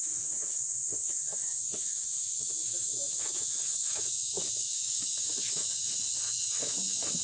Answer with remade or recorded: remade